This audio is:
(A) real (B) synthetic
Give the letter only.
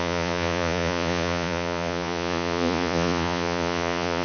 B